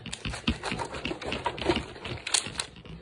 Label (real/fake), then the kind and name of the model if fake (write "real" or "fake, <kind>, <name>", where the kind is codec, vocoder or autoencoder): real